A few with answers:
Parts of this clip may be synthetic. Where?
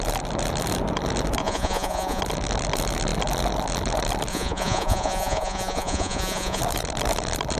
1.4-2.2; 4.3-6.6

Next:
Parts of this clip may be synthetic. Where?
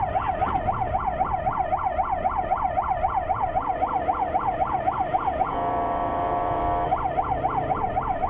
5.1-6.6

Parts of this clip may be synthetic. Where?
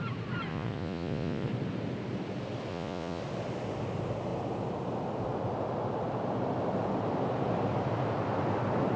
0.5-1.5; 2.7-3.2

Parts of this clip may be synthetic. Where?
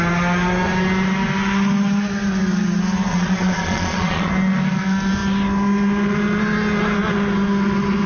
3.1-4.3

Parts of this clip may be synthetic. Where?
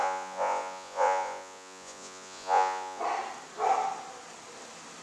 0.0-3.0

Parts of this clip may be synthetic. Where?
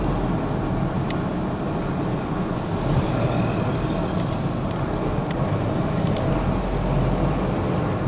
2.1-2.6